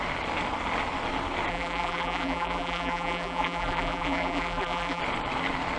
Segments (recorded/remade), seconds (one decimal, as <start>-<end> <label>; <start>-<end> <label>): 0.0-1.5 recorded; 1.5-5.0 remade; 5.0-5.8 recorded